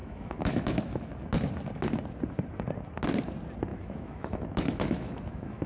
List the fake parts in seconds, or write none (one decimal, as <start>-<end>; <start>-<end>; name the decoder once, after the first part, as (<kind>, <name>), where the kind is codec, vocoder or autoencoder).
0.0-1.1 (autoencoder, DAC-VAE); 3.7-5.7

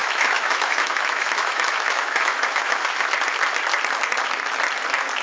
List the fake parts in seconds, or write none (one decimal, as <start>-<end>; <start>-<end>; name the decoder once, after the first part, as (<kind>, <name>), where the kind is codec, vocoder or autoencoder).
0.0-3.1 (autoencoder, DAC-VAE)